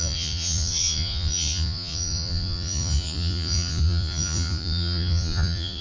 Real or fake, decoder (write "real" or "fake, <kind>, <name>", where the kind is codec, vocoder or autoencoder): fake, vocoder, Vocos